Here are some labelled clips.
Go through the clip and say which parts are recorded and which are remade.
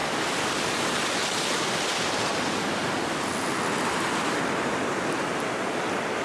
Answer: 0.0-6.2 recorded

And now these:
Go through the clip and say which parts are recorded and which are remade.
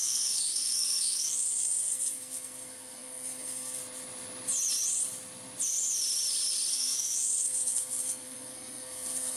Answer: 0.0-3.8 remade; 3.8-6.7 recorded; 6.7-9.4 remade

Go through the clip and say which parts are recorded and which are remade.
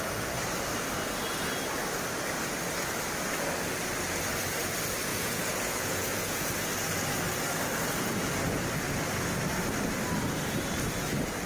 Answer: 0.0-5.1 recorded; 5.1-6.5 remade; 6.5-11.5 recorded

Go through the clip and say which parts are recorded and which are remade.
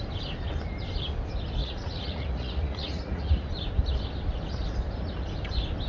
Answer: 0.0-1.6 recorded; 1.6-3.5 remade; 3.5-5.9 recorded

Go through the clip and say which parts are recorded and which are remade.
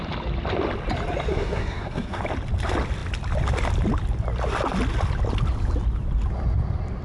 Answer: 0.0-1.3 recorded; 1.3-2.2 remade; 2.2-7.0 recorded